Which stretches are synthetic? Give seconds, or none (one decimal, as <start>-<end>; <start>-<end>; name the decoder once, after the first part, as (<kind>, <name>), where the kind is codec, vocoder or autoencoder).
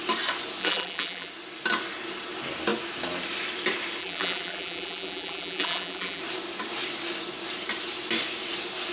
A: 0.6-1.3 (vocoder, BigVGAN v2); 4.0-6.2